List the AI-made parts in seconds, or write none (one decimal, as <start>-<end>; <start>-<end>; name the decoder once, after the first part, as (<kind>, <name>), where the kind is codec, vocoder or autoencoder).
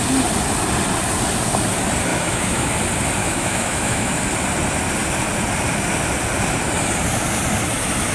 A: 2.1-2.7 (autoencoder, DAC-VAE); 3.2-4.1